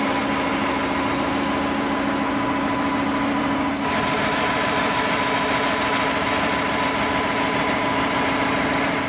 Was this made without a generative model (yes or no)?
yes